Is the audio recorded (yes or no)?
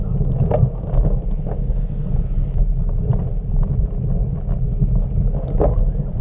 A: yes